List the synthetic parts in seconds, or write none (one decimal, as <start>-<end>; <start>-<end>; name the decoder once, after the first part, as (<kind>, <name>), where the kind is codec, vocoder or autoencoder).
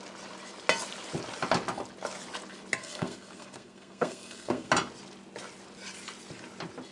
2.8-4.7 (codec, SNAC)